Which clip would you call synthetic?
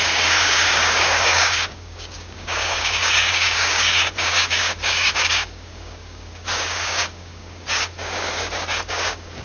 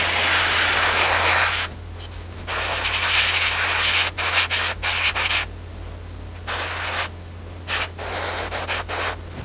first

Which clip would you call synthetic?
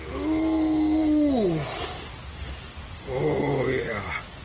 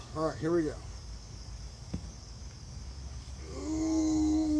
second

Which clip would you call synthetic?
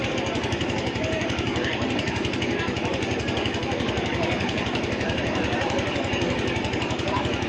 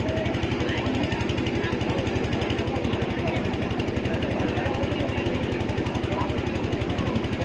first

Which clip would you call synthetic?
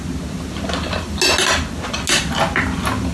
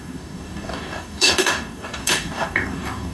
second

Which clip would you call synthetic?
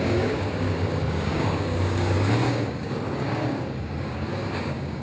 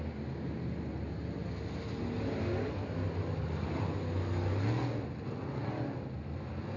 first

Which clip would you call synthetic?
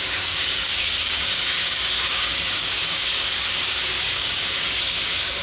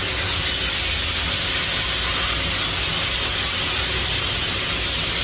first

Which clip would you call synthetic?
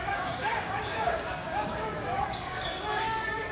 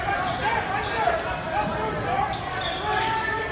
first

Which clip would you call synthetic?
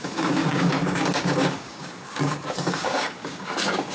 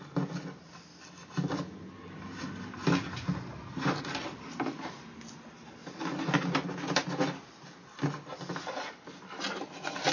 first